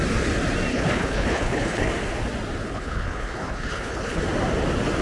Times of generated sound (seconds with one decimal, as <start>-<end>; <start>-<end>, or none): 0.7-1.9; 2.6-4.2